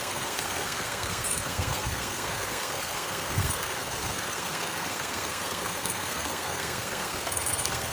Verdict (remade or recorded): remade